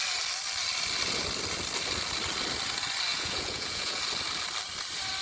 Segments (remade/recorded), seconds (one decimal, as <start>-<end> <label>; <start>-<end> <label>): 0.0-3.1 recorded; 3.1-4.0 remade; 4.0-5.2 recorded